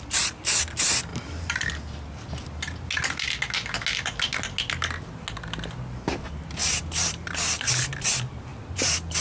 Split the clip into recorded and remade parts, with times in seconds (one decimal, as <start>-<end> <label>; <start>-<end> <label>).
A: 0.0-1.1 recorded; 1.1-1.7 remade; 1.7-6.6 recorded; 6.6-7.7 remade; 7.7-9.2 recorded